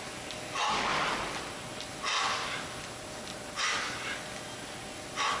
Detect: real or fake real